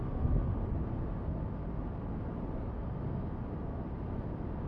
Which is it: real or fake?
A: real